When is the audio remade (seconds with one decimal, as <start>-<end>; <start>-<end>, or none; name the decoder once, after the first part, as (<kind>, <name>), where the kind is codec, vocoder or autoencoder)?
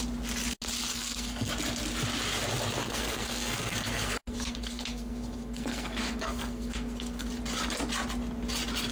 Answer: 0.9-1.5 (codec, SNAC); 2.8-7.3